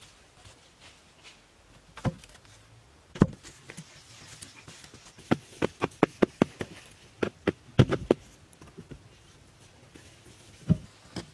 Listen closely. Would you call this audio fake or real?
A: real